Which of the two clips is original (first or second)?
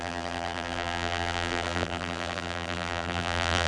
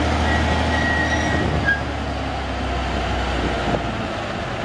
second